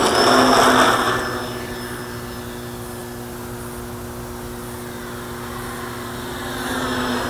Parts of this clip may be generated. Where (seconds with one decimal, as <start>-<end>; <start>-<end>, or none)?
none